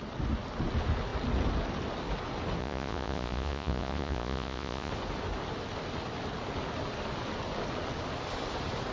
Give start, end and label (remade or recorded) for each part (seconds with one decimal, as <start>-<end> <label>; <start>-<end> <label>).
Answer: 0.0-2.6 recorded; 2.6-4.9 remade; 4.9-8.9 recorded

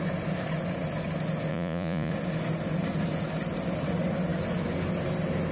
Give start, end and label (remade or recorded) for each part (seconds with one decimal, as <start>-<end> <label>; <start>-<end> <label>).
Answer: 0.0-1.5 recorded; 1.5-2.1 remade; 2.1-5.5 recorded

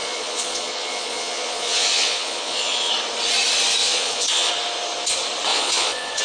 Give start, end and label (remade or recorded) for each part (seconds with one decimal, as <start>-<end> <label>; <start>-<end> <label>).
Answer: 0.0-2.9 remade; 2.9-3.8 recorded; 3.8-4.5 remade; 4.5-5.5 recorded; 5.5-6.2 remade